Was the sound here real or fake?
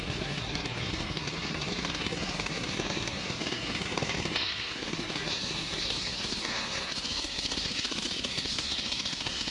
fake